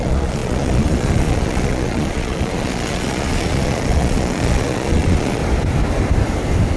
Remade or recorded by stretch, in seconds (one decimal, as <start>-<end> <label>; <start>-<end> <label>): 0.0-5.4 remade; 5.4-6.8 recorded